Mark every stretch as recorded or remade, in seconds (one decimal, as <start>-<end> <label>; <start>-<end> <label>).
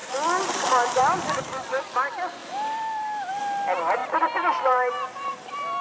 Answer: 0.0-1.8 remade; 1.8-2.4 recorded; 2.4-3.4 remade; 3.4-4.0 recorded; 4.0-5.8 remade